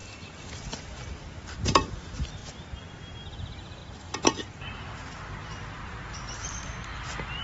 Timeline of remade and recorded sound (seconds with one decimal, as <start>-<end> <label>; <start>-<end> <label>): 0.0-0.7 recorded; 0.7-3.8 remade; 3.8-4.7 recorded; 4.7-5.8 remade; 5.8-6.5 recorded; 6.5-7.4 remade